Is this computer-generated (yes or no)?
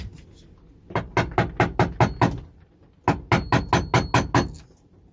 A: no